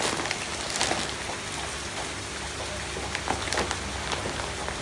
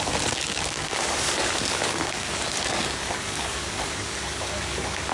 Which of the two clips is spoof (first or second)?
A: second